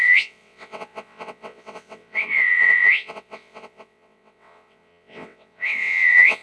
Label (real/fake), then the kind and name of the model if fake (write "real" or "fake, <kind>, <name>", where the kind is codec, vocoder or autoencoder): fake, vocoder, WaveNeXt